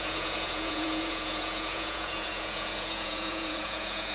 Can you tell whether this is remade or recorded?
remade